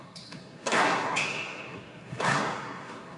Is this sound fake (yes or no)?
yes